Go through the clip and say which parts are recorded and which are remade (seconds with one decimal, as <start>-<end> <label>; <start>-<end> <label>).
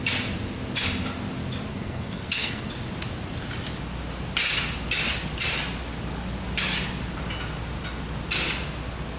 0.0-1.7 recorded; 1.7-2.7 remade; 2.7-9.2 recorded